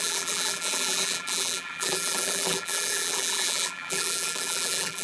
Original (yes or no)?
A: no